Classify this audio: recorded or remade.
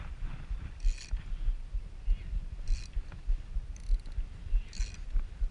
recorded